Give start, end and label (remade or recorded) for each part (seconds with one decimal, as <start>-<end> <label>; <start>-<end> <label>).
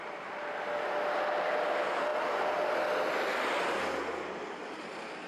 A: 0.0-5.3 recorded